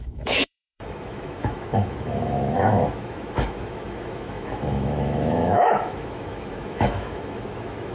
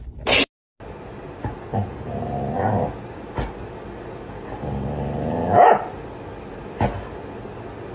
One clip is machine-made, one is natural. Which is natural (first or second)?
second